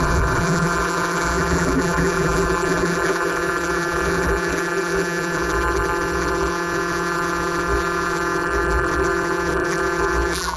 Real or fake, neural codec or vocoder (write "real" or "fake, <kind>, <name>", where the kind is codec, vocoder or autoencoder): fake, vocoder, BigVGAN v2